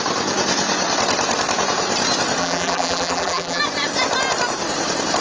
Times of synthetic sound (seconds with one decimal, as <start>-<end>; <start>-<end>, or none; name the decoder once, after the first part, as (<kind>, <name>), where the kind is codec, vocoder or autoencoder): 2.4-3.6 (vocoder, BigVGAN v2)